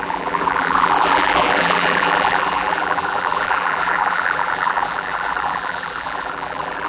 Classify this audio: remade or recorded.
remade